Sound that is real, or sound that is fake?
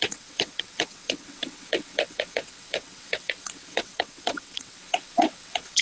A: fake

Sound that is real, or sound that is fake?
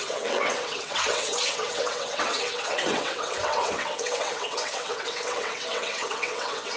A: fake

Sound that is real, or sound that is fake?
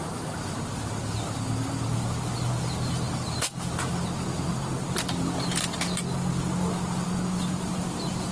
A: real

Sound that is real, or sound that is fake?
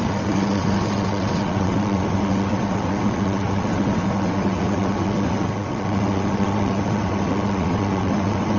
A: fake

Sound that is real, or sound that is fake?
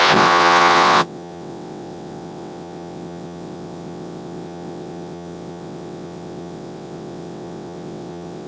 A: fake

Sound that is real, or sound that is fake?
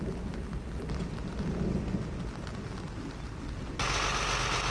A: real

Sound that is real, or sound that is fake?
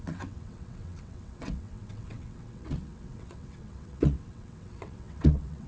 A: fake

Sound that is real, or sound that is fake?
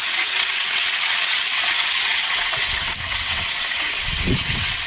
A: fake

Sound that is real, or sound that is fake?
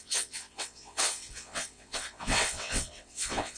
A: fake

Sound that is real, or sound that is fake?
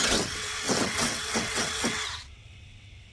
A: fake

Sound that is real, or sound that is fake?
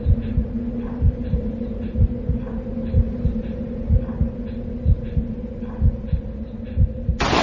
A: real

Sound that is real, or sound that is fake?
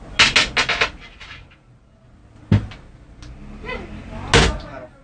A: real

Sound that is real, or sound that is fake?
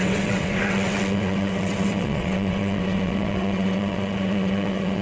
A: fake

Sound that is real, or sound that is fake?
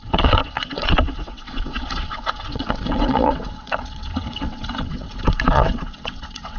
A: fake